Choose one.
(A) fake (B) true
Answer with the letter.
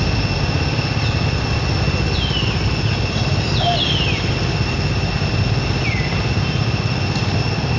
B